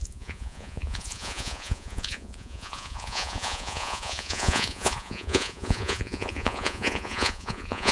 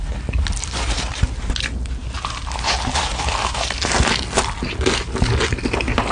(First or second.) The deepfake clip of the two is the first